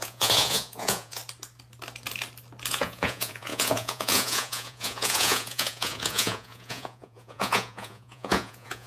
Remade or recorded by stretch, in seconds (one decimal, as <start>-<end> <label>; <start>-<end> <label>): 0.0-1.2 remade; 1.2-2.7 recorded; 2.7-8.9 remade